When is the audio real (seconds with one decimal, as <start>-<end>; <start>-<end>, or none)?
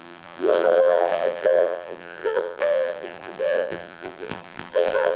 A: none